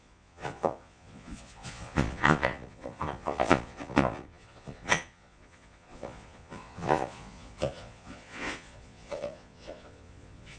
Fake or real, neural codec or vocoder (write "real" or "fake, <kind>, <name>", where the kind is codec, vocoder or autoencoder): fake, vocoder, Vocos